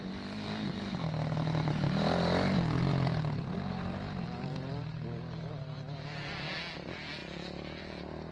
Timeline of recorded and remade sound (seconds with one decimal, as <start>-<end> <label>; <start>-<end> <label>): 0.0-8.3 recorded